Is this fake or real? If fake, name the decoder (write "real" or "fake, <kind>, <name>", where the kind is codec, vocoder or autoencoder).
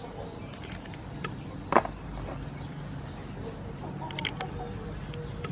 real